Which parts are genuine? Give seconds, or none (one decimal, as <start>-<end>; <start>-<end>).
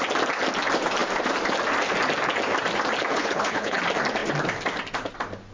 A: 0.0-3.1; 3.8-5.5